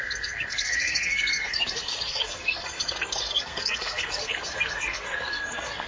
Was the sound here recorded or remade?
remade